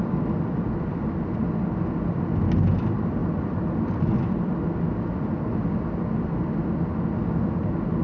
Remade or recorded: recorded